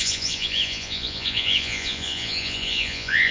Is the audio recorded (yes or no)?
no